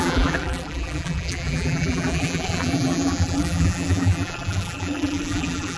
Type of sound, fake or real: fake